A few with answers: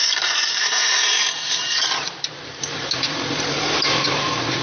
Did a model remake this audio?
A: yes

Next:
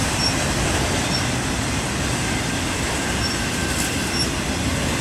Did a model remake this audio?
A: no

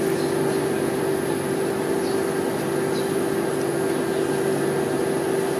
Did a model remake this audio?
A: no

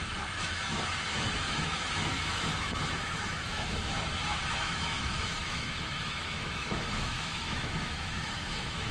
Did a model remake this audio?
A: yes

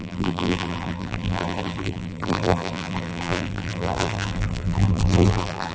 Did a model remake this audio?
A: yes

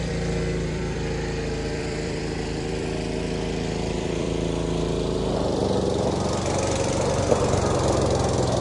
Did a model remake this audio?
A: yes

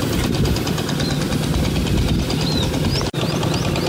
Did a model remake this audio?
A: no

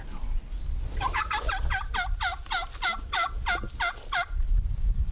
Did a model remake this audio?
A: no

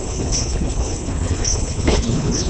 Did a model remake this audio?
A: yes